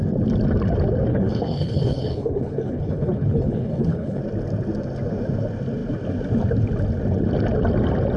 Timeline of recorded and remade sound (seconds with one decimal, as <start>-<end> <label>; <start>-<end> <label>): 0.0-1.1 recorded; 1.1-4.2 remade; 4.2-8.2 recorded